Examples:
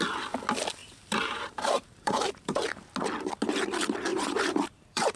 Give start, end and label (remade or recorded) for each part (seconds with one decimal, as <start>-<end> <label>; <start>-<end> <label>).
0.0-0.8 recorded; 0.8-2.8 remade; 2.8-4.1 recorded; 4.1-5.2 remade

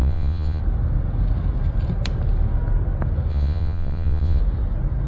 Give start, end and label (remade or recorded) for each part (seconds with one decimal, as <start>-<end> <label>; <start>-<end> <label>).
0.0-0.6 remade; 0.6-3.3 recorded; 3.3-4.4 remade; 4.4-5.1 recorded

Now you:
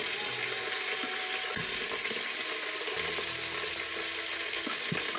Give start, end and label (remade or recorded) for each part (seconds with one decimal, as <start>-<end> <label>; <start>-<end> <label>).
0.0-5.2 recorded

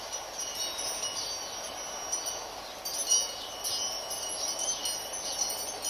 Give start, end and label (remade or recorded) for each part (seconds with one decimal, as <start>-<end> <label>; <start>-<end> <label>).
0.0-5.9 recorded

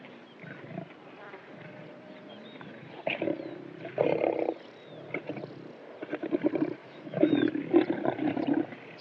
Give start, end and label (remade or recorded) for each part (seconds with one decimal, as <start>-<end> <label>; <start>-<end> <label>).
0.0-6.8 recorded; 6.8-7.5 remade; 7.5-9.0 recorded

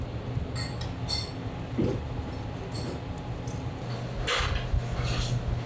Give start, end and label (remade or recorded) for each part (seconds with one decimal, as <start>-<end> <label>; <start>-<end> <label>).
0.0-5.7 recorded

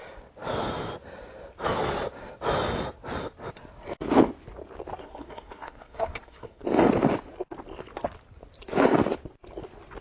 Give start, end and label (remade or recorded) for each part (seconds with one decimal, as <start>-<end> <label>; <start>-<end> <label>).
0.0-5.0 recorded; 5.0-6.6 remade; 6.6-10.0 recorded

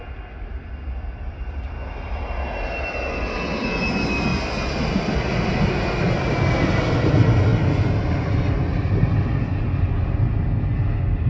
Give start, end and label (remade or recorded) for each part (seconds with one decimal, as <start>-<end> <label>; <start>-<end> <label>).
0.0-11.3 recorded